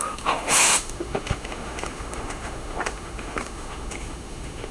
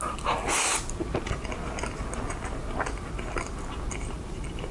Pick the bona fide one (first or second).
second